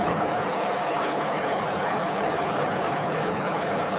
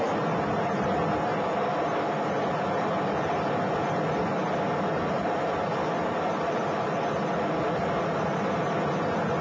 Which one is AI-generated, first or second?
first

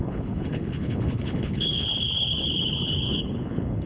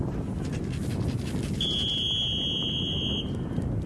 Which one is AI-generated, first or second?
first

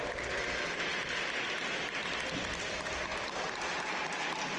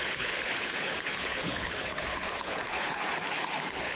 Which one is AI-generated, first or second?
second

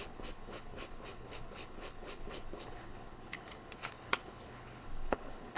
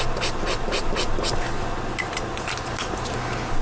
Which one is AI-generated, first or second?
first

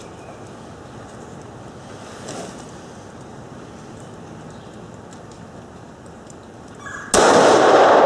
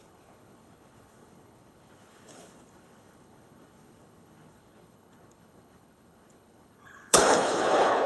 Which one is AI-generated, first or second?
second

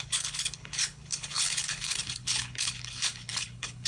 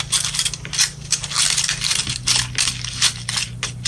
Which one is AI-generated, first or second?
first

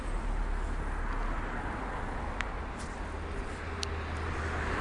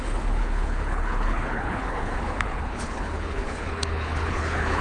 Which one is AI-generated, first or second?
second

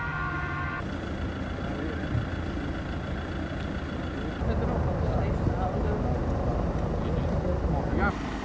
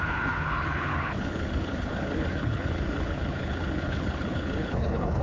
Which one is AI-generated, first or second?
second